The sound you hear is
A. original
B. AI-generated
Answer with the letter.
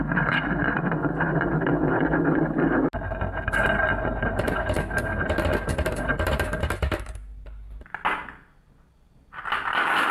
A